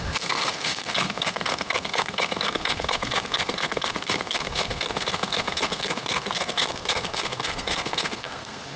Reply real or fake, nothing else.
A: fake